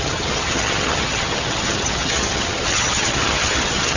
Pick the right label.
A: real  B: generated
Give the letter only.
B